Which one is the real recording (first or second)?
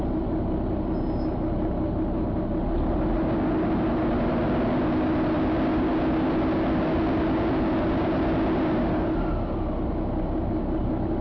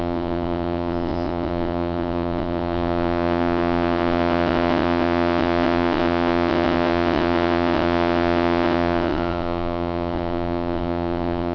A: first